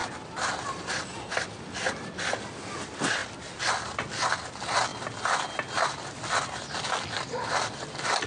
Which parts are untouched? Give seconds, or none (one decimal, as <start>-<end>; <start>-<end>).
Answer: 0.0-8.3